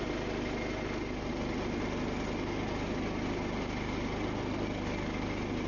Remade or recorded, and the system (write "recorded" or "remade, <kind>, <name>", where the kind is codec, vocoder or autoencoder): recorded